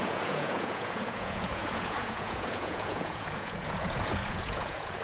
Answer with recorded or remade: remade